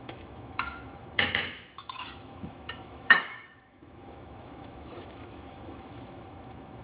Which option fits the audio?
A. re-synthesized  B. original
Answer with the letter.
A